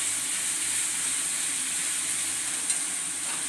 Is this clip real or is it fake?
real